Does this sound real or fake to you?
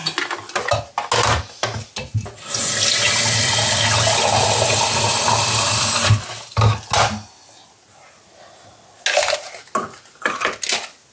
real